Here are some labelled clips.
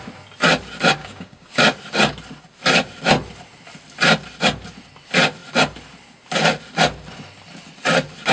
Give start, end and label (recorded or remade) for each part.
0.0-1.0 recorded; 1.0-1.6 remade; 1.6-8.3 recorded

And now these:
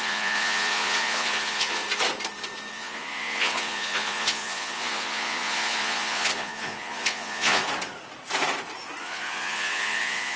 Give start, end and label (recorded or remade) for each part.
0.0-1.8 remade; 1.8-2.7 recorded; 2.7-7.6 remade; 7.6-9.0 recorded; 9.0-10.4 remade

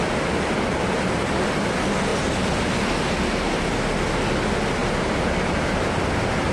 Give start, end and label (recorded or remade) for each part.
0.0-4.8 recorded; 4.8-5.9 remade; 5.9-6.5 recorded

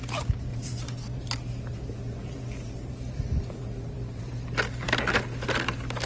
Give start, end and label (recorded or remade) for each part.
0.0-0.5 recorded; 0.5-4.2 remade; 4.2-6.1 recorded

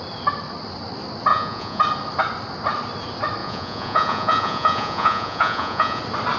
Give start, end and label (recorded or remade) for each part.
0.0-1.3 recorded; 1.3-1.8 remade; 1.8-3.4 recorded; 3.4-6.0 remade; 6.0-6.4 recorded

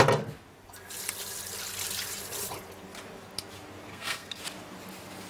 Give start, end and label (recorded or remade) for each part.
0.0-3.9 recorded; 3.9-4.4 remade; 4.4-5.3 recorded

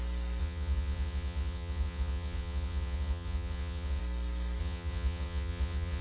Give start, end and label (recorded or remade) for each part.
0.0-0.4 recorded; 0.4-4.0 remade; 4.0-4.6 recorded; 4.6-6.0 remade

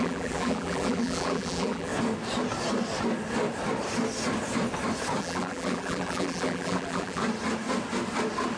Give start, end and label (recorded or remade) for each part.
0.0-1.9 remade; 1.9-5.2 recorded; 5.2-7.2 remade; 7.2-8.6 recorded